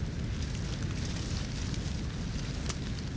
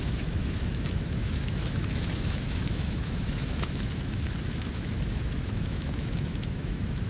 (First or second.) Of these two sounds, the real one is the first